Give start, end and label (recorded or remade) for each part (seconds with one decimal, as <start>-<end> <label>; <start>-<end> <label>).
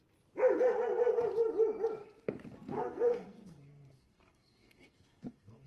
0.0-2.0 recorded; 2.0-5.7 remade